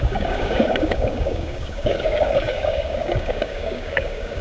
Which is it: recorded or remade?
remade